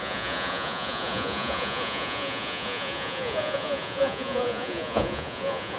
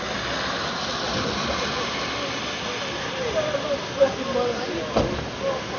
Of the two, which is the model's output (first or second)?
first